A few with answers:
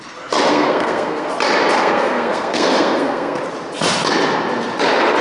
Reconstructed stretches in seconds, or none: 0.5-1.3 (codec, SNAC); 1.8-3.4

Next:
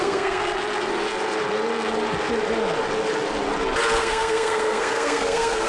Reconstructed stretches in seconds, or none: 0.0-0.6 (codec, SNAC); 4.0-5.7

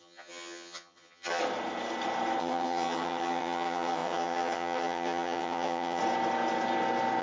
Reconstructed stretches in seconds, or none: 0.0-1.4 (vocoder, HiFi-GAN); 2.4-6.0